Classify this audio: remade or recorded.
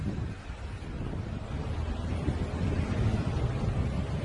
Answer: recorded